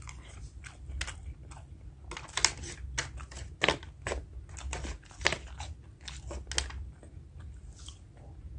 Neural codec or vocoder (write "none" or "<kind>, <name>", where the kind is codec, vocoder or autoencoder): none